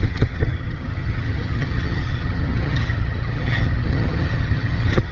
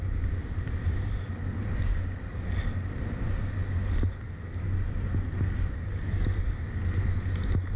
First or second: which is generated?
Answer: first